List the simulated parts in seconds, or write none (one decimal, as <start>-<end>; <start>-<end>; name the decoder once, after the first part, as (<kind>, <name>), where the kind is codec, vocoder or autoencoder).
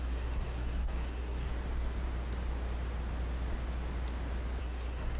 0.0-1.5 (codec, SNAC); 4.6-5.2